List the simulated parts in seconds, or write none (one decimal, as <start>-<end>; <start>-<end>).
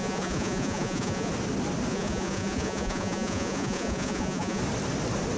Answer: 0.0-1.3; 1.9-4.6